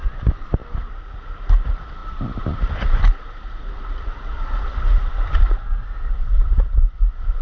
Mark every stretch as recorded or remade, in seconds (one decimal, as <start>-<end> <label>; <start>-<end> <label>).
0.0-7.4 remade